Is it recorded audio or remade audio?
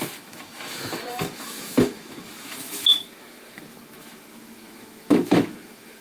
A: remade